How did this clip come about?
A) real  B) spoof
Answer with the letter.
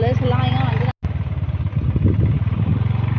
A